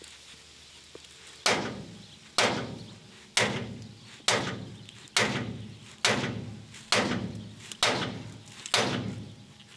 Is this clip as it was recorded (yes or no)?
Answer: yes